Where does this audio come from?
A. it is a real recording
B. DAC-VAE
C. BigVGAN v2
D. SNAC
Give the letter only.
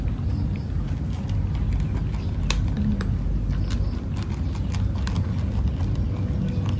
A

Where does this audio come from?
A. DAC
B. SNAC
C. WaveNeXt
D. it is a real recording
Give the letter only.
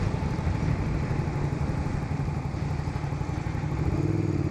D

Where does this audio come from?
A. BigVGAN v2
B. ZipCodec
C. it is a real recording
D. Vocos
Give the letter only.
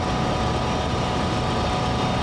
C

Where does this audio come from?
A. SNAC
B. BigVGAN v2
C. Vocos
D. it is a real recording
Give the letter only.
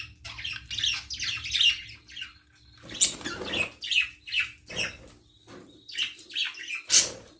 D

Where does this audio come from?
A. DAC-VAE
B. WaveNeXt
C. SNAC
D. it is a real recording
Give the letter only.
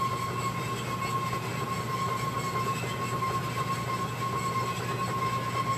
D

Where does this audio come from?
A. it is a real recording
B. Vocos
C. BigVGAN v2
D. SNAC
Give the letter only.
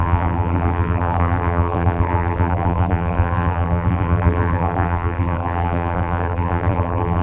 C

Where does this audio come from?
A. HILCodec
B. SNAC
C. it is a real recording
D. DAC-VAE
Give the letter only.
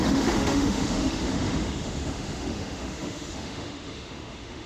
D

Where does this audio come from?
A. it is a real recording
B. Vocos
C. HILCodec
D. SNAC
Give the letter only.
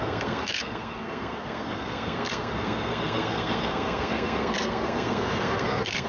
D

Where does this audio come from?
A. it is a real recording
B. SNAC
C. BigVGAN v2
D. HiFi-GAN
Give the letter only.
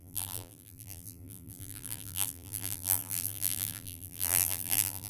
C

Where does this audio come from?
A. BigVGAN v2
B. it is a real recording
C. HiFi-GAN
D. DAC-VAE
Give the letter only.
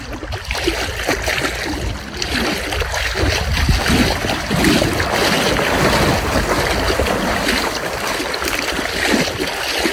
B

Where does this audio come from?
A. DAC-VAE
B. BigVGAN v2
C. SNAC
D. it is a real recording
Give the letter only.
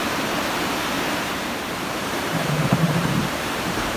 B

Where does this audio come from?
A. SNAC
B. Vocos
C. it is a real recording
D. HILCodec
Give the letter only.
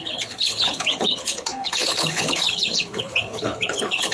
D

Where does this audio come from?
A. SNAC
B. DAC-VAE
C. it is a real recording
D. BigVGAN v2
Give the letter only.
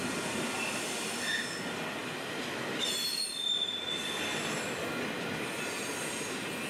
C